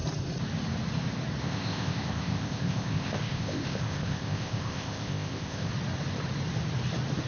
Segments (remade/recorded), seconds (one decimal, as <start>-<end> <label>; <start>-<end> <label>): 0.0-1.4 recorded; 1.4-5.7 remade; 5.7-7.3 recorded